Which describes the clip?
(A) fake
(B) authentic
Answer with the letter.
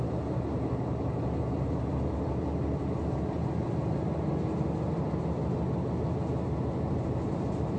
B